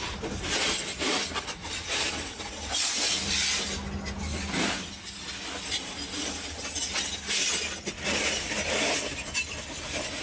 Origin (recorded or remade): recorded